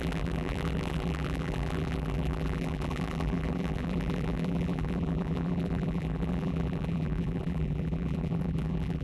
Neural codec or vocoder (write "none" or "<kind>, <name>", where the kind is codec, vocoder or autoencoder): vocoder, BigVGAN v2